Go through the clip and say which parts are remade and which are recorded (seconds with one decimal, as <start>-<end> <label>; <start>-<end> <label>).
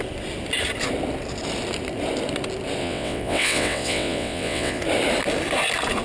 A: 0.0-2.8 recorded; 2.8-4.8 remade; 4.8-6.0 recorded